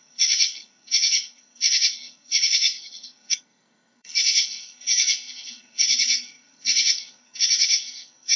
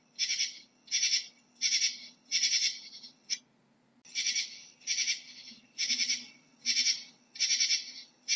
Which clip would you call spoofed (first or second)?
first